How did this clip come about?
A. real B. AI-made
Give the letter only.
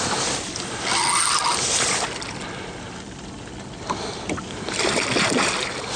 A